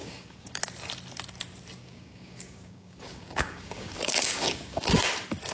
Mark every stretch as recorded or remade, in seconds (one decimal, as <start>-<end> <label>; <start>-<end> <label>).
0.0-0.6 remade; 0.6-1.8 recorded; 1.8-5.1 remade; 5.1-5.5 recorded